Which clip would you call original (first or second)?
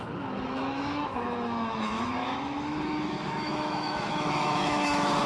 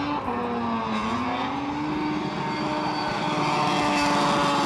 second